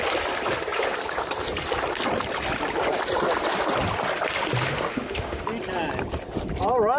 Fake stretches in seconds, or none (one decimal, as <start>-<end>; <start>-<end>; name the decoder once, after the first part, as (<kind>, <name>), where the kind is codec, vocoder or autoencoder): 4.7-5.4 (autoencoder, DAC-VAE)